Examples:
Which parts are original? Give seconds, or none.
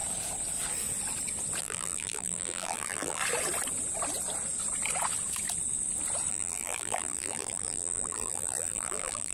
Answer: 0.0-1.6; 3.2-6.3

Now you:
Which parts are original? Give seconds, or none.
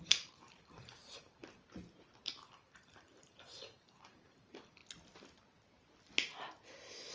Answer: 1.4-2.5; 4.8-7.1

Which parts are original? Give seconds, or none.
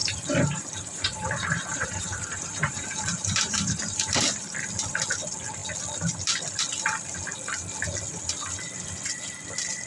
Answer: 4.2-9.9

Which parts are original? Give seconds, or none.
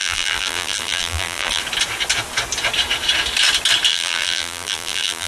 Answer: 1.6-3.9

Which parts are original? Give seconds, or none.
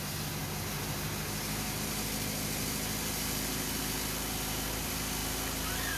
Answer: 0.0-6.0